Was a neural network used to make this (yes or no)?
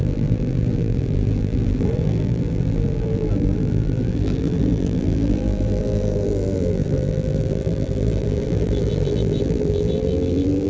yes